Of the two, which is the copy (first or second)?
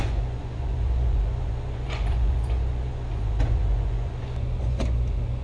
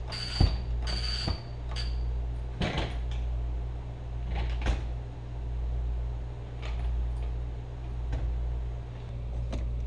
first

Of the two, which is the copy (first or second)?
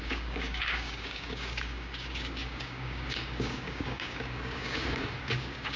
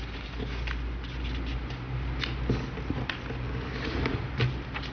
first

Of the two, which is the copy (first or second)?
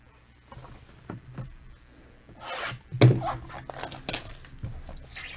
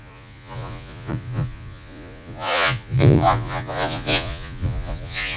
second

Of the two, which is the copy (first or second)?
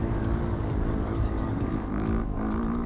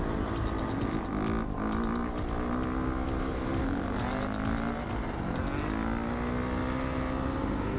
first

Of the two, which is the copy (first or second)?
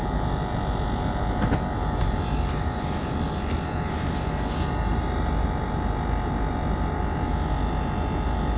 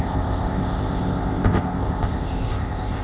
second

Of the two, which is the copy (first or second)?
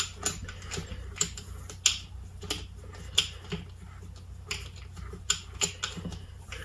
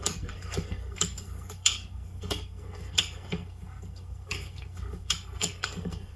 second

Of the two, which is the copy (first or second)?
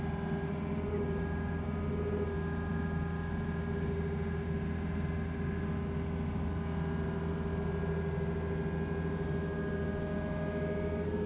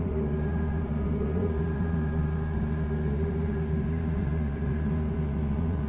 second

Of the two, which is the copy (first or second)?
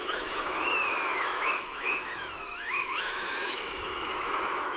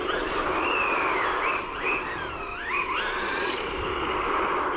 first